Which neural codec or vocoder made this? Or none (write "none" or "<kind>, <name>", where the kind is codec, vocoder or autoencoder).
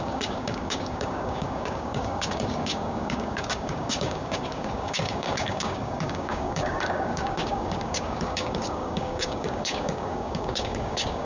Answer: codec, DAC